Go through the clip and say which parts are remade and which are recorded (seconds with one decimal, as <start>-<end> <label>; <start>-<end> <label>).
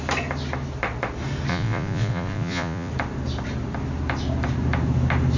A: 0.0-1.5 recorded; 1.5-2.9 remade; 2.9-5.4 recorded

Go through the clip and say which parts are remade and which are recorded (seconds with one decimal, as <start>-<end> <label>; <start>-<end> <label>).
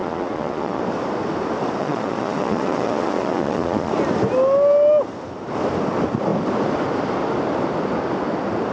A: 0.0-0.8 remade; 0.8-1.8 recorded; 1.8-3.9 remade; 3.9-8.7 recorded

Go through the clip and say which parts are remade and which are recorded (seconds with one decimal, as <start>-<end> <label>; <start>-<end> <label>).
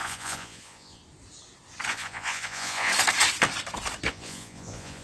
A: 0.0-1.0 remade; 1.0-1.9 recorded; 1.9-2.9 remade; 2.9-4.1 recorded; 4.1-5.0 remade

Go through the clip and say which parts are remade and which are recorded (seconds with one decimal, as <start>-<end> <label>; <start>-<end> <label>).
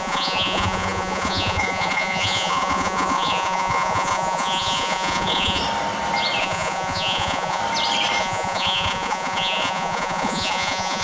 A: 0.0-5.6 remade; 5.6-6.4 recorded; 6.4-7.6 remade; 7.6-8.2 recorded; 8.2-11.0 remade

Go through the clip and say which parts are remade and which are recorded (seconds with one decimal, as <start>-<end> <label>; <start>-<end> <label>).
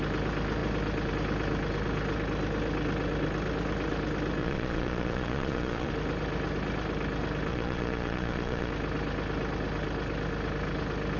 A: 0.0-4.4 recorded; 4.4-5.9 remade; 5.9-7.5 recorded; 7.5-8.7 remade; 8.7-11.2 recorded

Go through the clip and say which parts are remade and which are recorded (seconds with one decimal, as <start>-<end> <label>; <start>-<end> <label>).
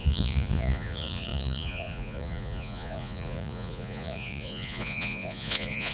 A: 0.0-5.9 remade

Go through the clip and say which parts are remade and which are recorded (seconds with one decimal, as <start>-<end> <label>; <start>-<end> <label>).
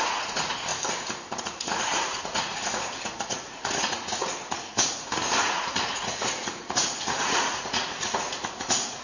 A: 0.0-0.7 remade; 0.7-1.4 recorded; 1.4-9.0 remade